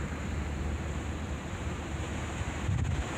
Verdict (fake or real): fake